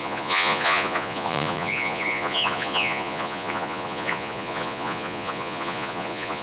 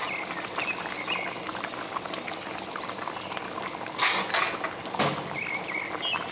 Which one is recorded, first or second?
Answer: second